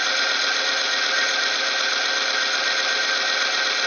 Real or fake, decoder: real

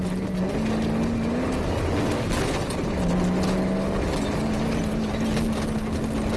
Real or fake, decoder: real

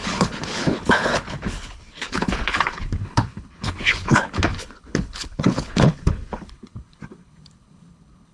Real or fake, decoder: fake, codec, HILCodec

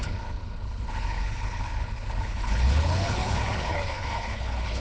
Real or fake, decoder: fake, codec, HILCodec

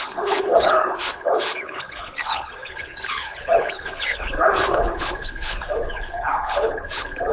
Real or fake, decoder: fake, codec, HILCodec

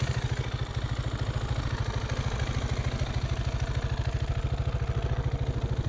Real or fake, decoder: real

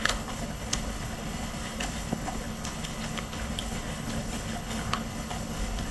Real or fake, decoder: fake, codec, HILCodec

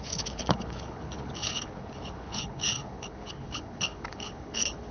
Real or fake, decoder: fake, codec, HILCodec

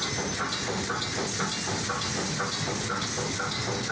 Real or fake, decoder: real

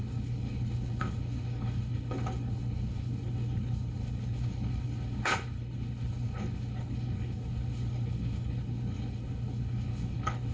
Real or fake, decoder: fake, codec, HILCodec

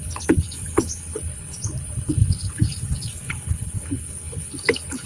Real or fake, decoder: fake, codec, HILCodec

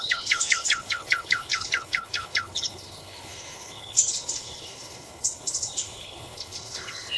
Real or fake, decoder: fake, codec, HILCodec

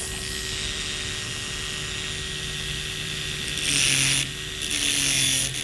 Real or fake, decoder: real